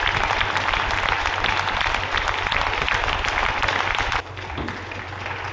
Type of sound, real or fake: real